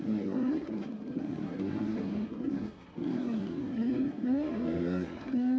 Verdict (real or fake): fake